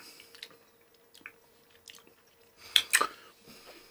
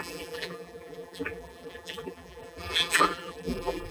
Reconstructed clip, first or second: second